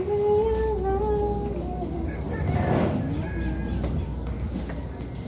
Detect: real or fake real